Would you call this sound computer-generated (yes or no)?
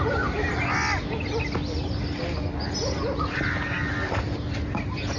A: no